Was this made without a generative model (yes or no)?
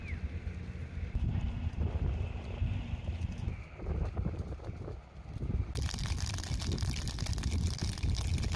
yes